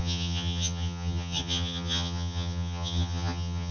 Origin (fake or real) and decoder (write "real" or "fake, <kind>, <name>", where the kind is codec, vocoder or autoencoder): fake, vocoder, HiFi-GAN